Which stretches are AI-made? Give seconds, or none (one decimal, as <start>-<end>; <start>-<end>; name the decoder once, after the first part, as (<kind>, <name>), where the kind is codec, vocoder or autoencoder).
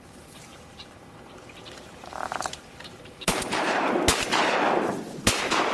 0.5-3.9 (vocoder, BigVGAN v2)